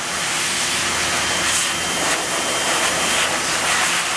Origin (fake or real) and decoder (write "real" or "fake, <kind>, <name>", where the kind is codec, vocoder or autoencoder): real